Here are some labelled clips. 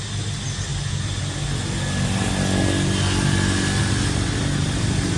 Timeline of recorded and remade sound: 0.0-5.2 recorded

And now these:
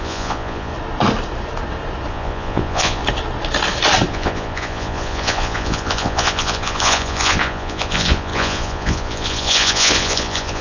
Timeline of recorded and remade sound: 0.0-0.7 remade; 0.7-2.1 recorded; 2.1-3.0 remade; 3.0-4.1 recorded; 4.1-10.6 remade

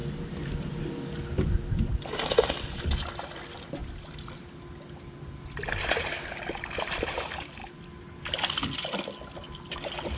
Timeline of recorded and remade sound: 0.0-10.2 recorded

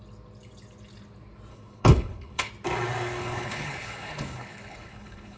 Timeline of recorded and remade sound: 0.0-1.5 recorded; 1.5-2.5 remade; 2.5-3.2 recorded; 3.2-5.4 remade

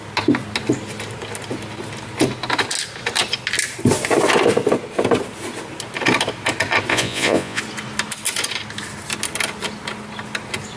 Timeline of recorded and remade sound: 0.0-6.9 recorded; 6.9-7.6 remade; 7.6-10.8 recorded

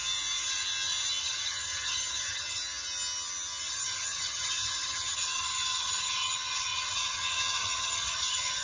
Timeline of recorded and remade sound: 0.0-1.2 recorded; 1.2-2.6 remade; 2.6-3.7 recorded; 3.7-8.6 remade